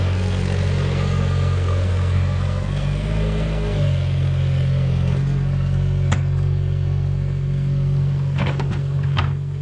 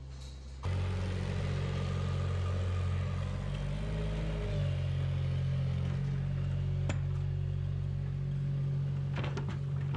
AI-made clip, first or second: first